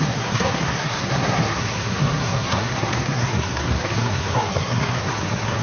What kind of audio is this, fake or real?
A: fake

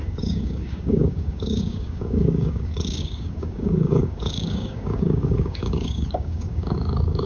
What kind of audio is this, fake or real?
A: fake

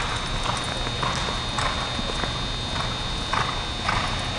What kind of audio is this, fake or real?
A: real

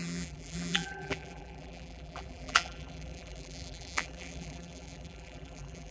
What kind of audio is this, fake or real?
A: fake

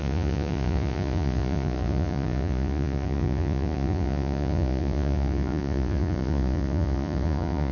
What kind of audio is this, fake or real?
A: fake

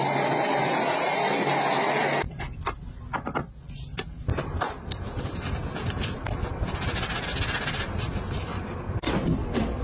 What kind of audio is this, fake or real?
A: real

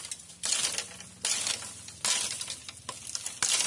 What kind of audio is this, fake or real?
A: real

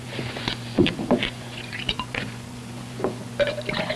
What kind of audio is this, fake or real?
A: fake